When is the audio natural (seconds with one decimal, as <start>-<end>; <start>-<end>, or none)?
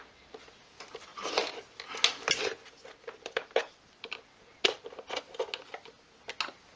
0.0-6.8